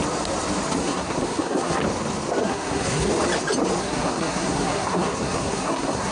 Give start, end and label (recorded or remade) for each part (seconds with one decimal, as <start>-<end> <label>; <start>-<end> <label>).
0.0-0.8 recorded; 0.8-1.8 remade; 1.8-2.4 recorded; 2.4-3.1 remade; 3.1-3.8 recorded; 3.8-6.1 remade